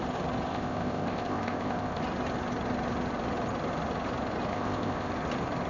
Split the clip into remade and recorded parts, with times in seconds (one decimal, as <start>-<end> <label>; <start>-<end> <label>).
0.0-0.5 recorded; 0.5-2.0 remade; 2.0-4.5 recorded; 4.5-5.1 remade; 5.1-5.7 recorded